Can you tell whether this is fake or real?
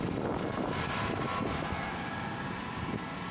real